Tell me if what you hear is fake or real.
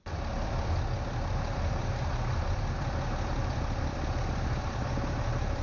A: fake